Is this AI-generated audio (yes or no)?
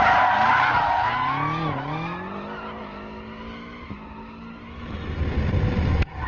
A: no